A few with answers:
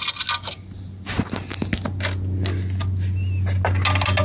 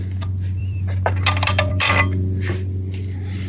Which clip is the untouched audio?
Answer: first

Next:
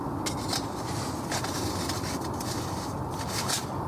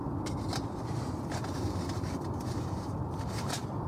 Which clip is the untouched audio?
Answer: first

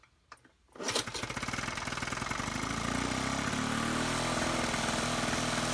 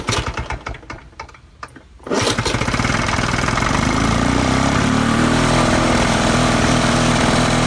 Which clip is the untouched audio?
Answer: first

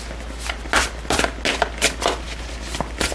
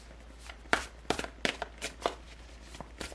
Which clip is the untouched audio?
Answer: first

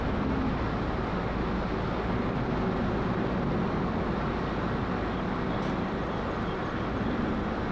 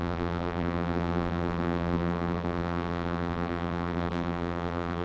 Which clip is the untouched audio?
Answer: first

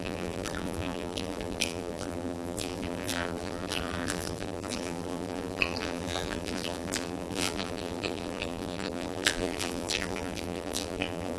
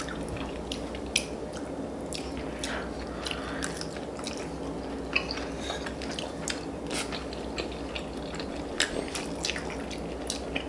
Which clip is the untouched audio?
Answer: second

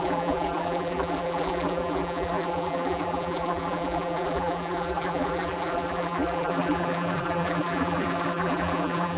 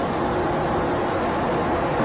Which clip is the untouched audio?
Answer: second